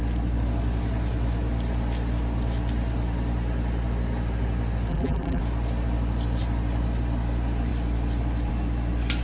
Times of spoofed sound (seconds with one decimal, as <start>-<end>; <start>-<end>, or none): 4.9-5.4

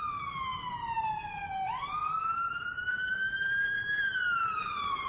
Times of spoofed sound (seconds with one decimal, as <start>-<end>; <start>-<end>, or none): 0.0-5.1